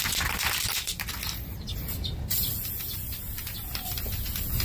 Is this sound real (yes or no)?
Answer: yes